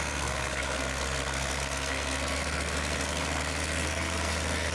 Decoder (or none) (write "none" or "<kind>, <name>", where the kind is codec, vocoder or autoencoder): codec, SNAC